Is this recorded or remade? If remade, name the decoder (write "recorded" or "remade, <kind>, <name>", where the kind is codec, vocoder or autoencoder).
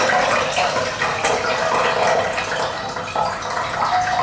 recorded